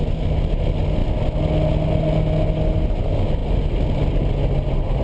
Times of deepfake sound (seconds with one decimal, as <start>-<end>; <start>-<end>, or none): none